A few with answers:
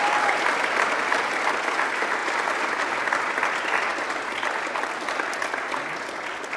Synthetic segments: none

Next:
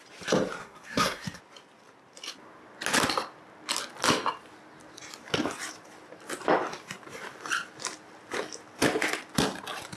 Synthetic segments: 0.6-1.4 (codec, SNAC)